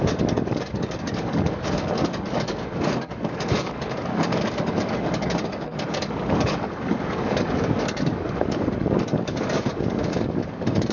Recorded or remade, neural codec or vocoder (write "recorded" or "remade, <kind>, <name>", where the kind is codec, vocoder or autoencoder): remade, codec, DAC